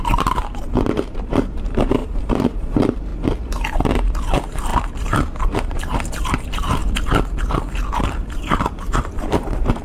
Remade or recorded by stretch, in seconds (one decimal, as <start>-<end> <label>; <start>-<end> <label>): 0.0-3.1 remade; 3.1-3.9 recorded; 3.9-6.8 remade; 6.8-8.0 recorded; 8.0-9.8 remade